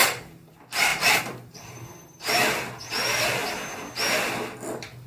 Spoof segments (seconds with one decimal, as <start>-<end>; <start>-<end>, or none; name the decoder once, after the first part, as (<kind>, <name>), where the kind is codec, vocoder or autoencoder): 0.0-0.5 (vocoder, BigVGAN v2); 0.9-1.9